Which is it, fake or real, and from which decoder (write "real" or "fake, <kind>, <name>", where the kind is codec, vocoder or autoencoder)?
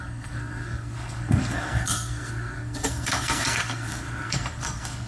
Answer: fake, codec, SNAC